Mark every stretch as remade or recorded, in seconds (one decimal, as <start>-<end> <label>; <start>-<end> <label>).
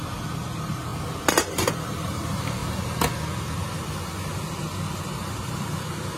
0.0-0.9 remade; 0.9-1.7 recorded; 1.7-2.6 remade; 2.6-4.9 recorded; 4.9-6.2 remade